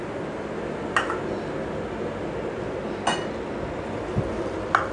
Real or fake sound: real